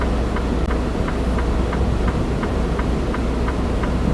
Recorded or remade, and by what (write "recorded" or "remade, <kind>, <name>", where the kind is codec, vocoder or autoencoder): recorded